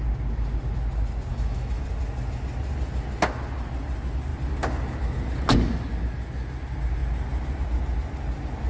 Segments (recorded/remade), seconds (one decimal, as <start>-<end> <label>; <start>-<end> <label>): 0.0-1.3 recorded; 1.3-1.8 remade; 1.8-8.7 recorded